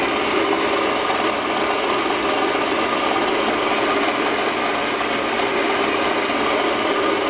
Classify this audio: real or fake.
real